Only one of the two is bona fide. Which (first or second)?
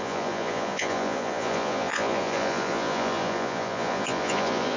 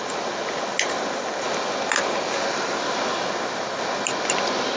second